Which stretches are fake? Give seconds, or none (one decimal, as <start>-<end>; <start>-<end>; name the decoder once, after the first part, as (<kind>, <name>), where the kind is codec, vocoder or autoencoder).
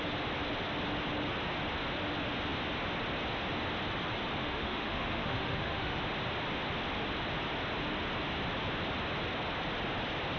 4.4-6.0 (autoencoder, DAC-VAE)